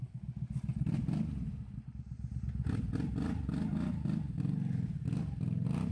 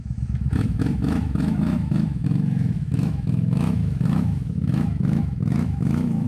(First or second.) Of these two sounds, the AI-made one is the second